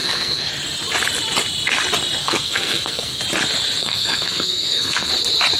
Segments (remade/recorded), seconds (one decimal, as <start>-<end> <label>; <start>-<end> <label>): 0.0-0.5 remade; 0.5-2.2 recorded; 2.2-3.2 remade; 3.2-3.8 recorded; 3.8-5.1 remade; 5.1-5.6 recorded